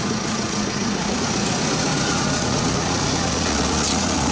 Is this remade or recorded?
remade